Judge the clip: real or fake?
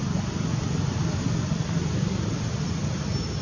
real